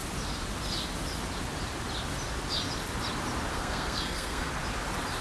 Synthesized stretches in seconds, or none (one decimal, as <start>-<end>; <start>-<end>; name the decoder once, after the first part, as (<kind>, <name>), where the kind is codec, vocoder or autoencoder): 3.5-4.5 (codec, SNAC)